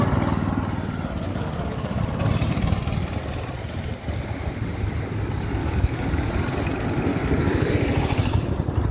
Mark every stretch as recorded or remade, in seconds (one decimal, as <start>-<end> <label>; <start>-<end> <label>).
0.0-1.3 recorded; 1.3-2.0 remade; 2.0-5.6 recorded; 5.6-6.3 remade; 6.3-7.1 recorded; 7.1-7.7 remade; 7.7-8.9 recorded